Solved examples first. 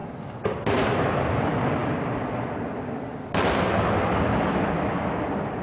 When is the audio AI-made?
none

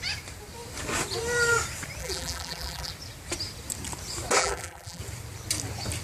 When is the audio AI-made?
2.0-2.9 (vocoder, BigVGAN v2); 4.4-5.0

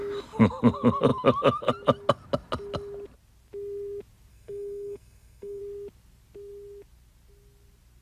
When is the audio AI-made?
4.3-5.6 (codec, SNAC)

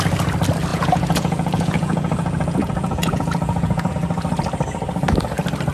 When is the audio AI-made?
0.7-3.9 (vocoder, Vocos)

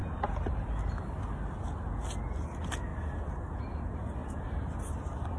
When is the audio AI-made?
0.0-0.8 (vocoder, BigVGAN v2); 4.2-5.4